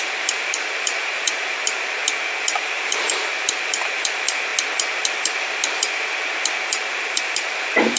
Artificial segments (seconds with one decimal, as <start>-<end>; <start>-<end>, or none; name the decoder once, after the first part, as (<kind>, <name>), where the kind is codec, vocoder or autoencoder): 0.0-2.0 (vocoder, BigVGAN v2); 2.6-4.5; 6.7-8.0